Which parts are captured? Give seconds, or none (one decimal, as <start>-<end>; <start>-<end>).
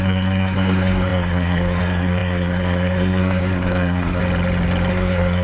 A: 4.2-4.9